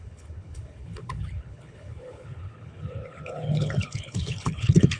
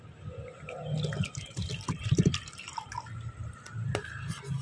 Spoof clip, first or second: first